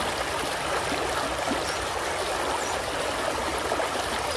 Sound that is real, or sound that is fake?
real